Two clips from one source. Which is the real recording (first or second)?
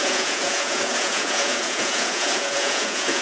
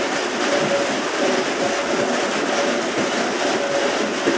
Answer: second